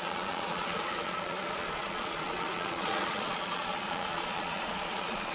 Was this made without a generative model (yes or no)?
no